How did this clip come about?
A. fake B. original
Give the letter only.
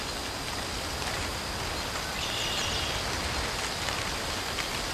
B